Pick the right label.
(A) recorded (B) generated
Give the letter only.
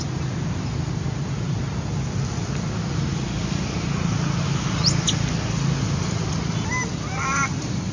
A